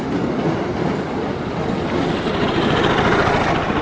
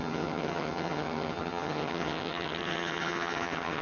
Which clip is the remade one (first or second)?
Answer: second